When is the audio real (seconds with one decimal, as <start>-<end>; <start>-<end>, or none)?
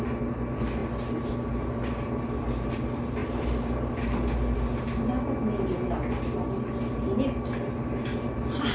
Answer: 0.0-3.2; 3.9-8.7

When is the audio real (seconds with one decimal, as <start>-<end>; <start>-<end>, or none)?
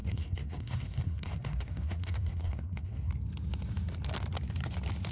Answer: 3.1-5.1